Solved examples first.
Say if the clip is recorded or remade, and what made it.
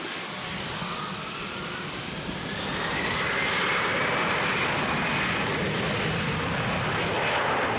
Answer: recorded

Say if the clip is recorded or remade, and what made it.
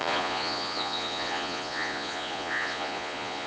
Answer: remade, vocoder, Vocos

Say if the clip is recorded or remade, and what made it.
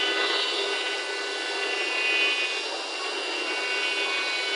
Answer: recorded